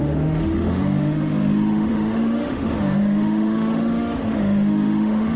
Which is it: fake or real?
fake